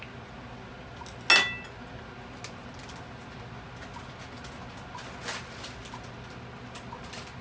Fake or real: real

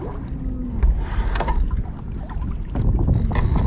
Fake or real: real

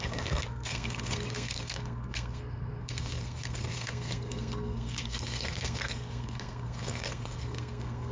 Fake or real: fake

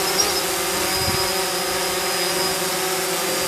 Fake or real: real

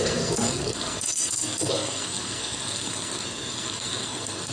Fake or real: fake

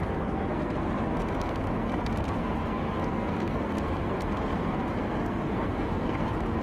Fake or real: fake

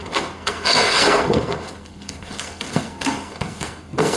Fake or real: fake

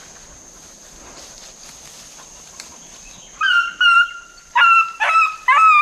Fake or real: real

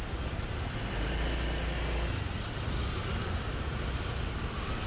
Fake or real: real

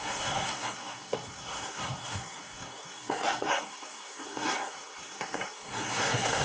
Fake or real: fake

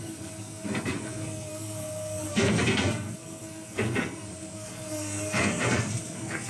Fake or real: fake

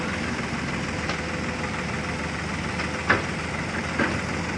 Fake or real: real